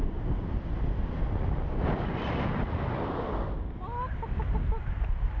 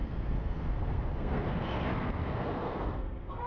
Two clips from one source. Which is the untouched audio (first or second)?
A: first